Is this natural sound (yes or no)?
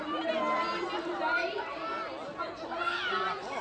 yes